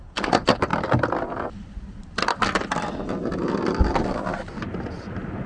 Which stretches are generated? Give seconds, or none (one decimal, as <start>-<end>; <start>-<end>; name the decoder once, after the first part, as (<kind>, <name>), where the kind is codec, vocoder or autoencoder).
0.7-3.7 (vocoder, BigVGAN v2)